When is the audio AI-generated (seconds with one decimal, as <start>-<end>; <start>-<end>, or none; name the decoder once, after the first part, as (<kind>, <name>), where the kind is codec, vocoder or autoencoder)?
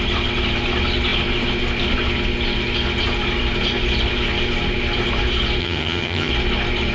5.6-6.3 (vocoder, HiFi-GAN)